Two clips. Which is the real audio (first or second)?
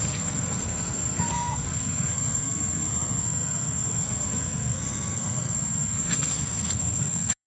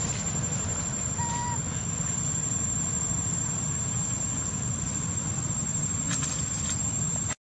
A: second